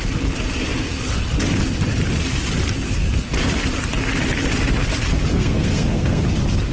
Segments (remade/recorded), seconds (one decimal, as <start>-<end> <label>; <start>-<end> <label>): 0.0-5.3 recorded; 5.3-6.2 remade; 6.2-6.7 recorded